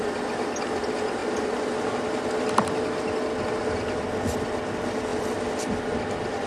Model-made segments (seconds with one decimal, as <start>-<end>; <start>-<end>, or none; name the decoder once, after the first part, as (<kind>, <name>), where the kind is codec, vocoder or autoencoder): none